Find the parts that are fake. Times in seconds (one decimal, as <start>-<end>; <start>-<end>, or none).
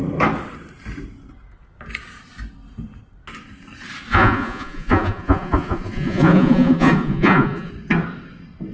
4.1-7.7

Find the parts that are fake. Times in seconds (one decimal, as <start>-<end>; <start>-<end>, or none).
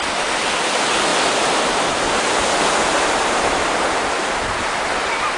none